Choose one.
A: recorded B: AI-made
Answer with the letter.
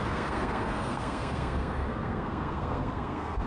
B